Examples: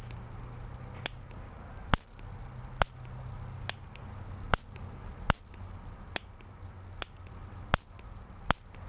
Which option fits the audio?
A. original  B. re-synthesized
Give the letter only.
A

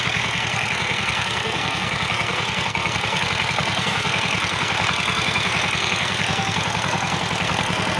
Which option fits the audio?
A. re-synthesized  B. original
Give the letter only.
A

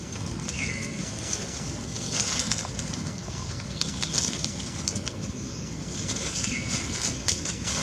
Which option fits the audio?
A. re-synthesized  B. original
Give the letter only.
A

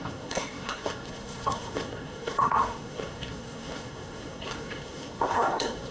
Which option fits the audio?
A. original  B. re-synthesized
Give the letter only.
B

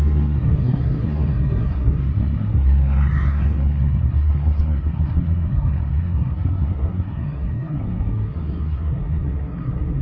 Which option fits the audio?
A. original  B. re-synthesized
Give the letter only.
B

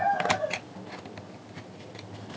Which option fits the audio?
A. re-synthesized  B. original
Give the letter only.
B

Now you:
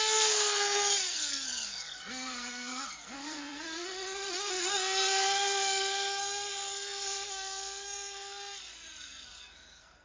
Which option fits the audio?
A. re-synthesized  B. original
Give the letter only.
A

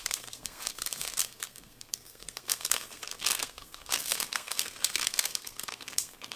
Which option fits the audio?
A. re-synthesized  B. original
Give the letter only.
A